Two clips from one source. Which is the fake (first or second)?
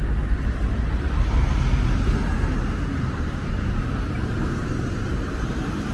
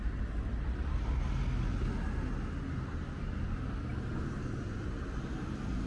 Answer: first